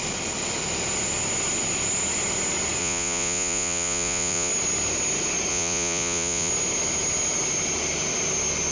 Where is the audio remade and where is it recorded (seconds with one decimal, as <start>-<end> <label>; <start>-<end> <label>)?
0.0-2.8 recorded; 2.8-4.5 remade; 4.5-5.5 recorded; 5.5-6.5 remade; 6.5-8.7 recorded